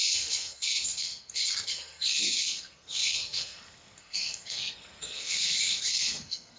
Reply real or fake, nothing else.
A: fake